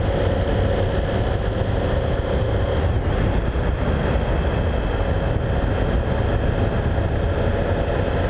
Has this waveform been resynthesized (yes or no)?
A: no